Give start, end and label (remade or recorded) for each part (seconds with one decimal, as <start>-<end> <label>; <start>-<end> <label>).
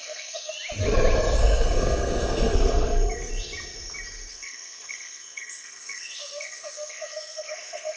0.0-0.5 remade; 0.5-1.4 recorded; 1.4-3.3 remade; 3.3-4.3 recorded; 4.3-8.0 remade